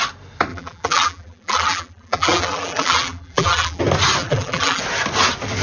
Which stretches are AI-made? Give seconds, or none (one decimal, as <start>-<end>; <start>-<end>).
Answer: 0.5-3.8; 4.2-4.8